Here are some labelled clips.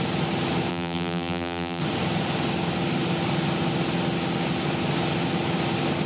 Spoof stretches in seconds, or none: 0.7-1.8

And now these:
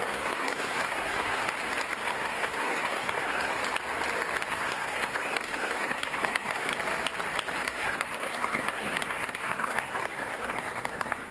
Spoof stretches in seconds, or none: 0.0-1.4; 2.1-3.6; 4.5-6.7; 7.6-11.3

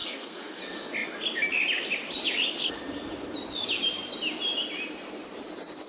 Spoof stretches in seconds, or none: 0.0-0.6

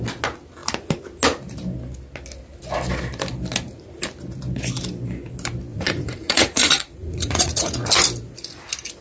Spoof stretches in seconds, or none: 5.7-7.9

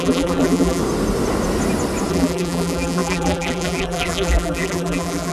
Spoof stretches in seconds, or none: 0.0-0.8; 2.1-5.3

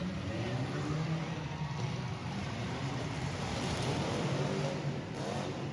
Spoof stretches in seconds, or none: 0.0-0.9; 2.2-4.6

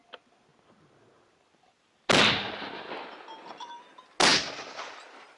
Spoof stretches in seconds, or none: none